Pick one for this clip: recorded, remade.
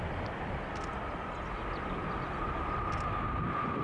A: recorded